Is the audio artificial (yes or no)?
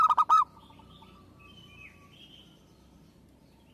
no